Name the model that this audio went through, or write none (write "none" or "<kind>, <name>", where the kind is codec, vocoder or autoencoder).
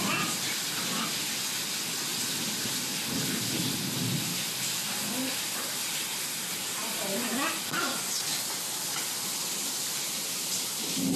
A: none